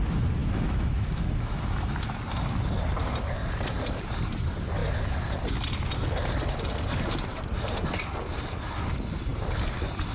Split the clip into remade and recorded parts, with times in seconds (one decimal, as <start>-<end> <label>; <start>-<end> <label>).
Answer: 0.0-0.4 recorded; 0.4-2.2 remade; 2.2-10.1 recorded